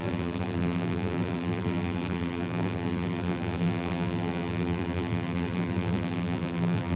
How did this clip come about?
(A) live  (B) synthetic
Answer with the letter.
B